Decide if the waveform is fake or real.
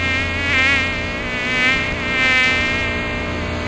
real